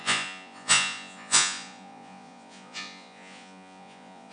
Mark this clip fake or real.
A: fake